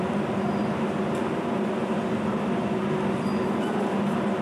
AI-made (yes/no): no